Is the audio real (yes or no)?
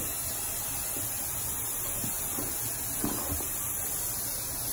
yes